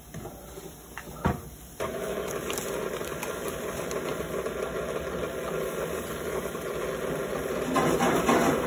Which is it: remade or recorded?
remade